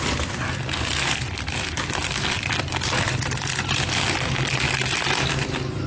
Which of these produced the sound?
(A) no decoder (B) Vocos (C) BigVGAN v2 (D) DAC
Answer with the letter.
A